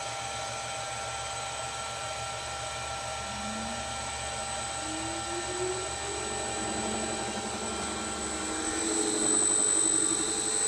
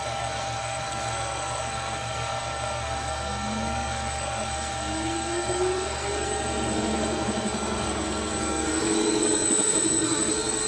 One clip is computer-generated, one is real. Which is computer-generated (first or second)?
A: second